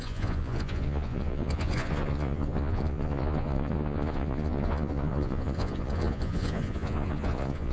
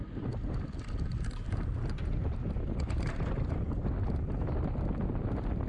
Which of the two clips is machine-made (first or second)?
first